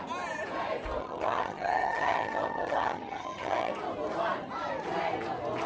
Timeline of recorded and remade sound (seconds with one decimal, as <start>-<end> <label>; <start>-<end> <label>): 0.0-1.0 recorded; 1.0-3.7 remade; 3.7-5.7 recorded